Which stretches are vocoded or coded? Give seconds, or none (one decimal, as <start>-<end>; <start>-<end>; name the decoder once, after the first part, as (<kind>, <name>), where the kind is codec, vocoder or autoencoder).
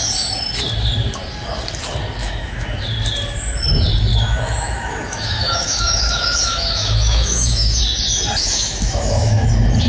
2.2-2.8 (autoencoder, DAC-VAE); 4.1-7.8; 8.4-9.5